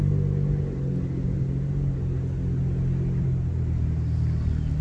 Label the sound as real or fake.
real